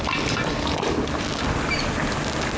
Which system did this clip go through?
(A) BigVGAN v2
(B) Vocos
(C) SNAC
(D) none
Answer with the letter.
D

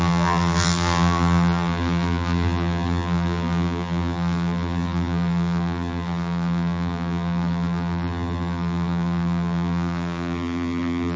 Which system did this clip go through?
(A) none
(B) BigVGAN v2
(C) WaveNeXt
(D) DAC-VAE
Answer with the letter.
B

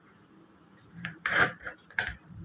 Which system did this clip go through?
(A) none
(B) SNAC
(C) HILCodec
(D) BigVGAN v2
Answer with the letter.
D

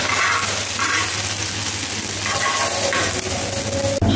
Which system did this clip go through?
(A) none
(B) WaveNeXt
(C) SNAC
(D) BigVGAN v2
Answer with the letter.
A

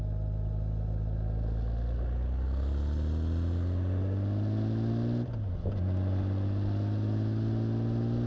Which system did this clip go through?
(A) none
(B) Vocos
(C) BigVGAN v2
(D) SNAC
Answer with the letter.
A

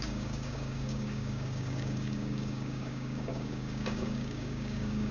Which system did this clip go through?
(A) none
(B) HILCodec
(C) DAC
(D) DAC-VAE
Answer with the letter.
C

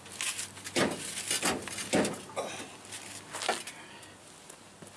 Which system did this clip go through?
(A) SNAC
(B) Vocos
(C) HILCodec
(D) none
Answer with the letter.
D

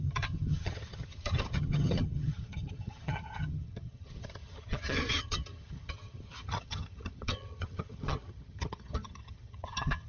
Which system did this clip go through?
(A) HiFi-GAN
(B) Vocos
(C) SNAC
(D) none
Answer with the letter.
A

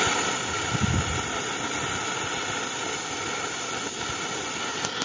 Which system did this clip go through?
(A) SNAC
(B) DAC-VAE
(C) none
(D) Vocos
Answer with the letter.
C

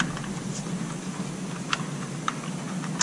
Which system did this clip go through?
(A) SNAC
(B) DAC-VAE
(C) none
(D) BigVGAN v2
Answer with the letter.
C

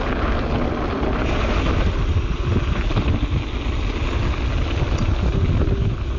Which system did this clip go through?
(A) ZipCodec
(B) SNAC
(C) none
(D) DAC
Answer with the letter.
C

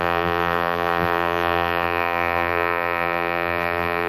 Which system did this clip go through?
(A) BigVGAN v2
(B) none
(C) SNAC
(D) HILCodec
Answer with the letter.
A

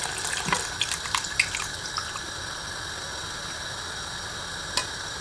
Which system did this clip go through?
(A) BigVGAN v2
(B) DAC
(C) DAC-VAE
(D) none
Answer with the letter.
D